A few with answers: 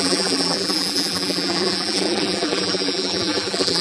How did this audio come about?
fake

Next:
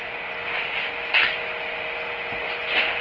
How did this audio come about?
real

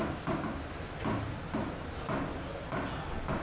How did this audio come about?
real